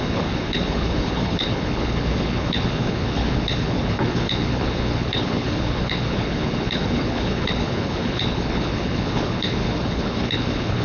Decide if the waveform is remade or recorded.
remade